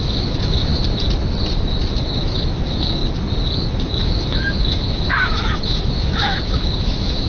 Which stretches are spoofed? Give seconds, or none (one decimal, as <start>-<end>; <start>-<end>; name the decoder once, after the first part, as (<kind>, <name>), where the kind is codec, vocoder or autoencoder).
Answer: 0.0-0.7 (autoencoder, DAC-VAE); 2.0-3.0; 3.7-7.3